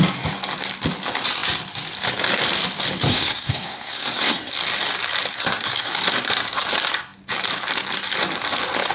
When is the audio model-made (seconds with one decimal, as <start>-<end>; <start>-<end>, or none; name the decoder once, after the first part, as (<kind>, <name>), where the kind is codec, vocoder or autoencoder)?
3.1-4.5 (codec, SNAC); 5.3-5.9